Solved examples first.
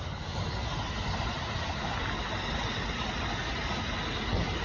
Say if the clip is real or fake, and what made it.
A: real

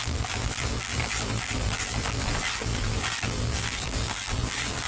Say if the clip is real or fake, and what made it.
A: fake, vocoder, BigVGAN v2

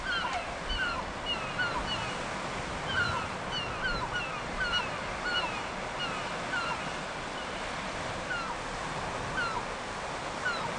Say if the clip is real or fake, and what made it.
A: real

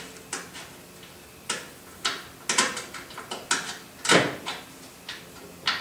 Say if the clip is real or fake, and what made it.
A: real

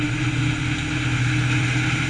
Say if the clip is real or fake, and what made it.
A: real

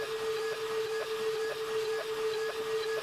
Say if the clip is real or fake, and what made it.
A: real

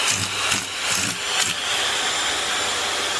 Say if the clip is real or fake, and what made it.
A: fake, vocoder, BigVGAN v2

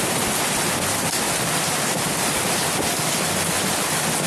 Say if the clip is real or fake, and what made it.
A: fake, vocoder, BigVGAN v2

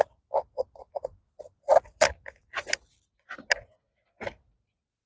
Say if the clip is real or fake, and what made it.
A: real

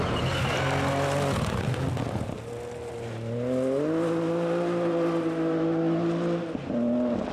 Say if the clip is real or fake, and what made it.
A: real